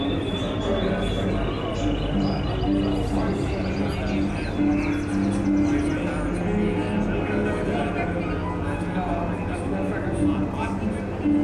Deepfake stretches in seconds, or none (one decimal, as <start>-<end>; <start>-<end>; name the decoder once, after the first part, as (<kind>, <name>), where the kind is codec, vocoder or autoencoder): none